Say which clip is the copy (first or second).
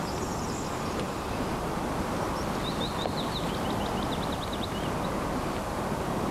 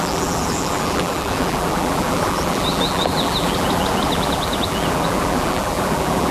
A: second